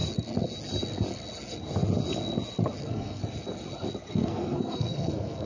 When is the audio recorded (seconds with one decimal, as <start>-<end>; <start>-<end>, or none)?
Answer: 0.0-2.8; 3.2-4.1